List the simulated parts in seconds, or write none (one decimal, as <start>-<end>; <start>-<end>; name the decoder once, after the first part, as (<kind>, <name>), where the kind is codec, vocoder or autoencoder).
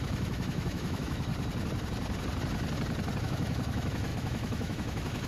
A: 0.0-1.3 (autoencoder, DAC-VAE); 3.2-5.3